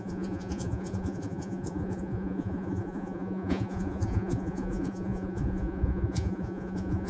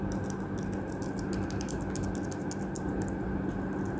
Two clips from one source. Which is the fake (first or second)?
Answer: first